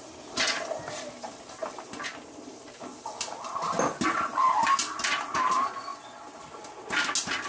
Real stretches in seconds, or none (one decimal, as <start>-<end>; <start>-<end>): 0.0-7.5